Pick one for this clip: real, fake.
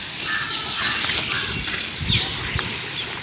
real